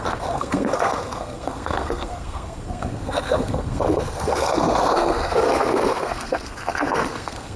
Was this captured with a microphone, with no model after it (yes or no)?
no